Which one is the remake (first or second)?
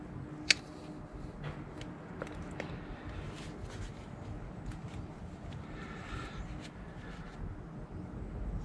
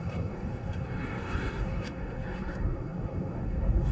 second